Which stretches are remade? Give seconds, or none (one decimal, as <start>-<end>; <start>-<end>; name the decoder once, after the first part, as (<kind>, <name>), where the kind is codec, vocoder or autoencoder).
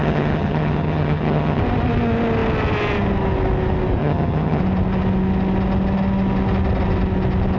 0.0-1.6 (vocoder, HiFi-GAN); 4.0-4.6